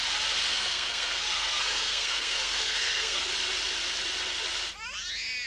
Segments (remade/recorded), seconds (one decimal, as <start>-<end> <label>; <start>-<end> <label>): 0.0-0.5 recorded; 0.5-3.3 remade; 3.3-5.5 recorded